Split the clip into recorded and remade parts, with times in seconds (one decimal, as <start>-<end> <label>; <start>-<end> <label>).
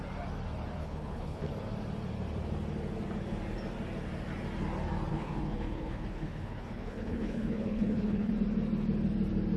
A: 0.0-0.8 recorded; 0.8-1.5 remade; 1.5-5.1 recorded; 5.1-8.3 remade; 8.3-9.6 recorded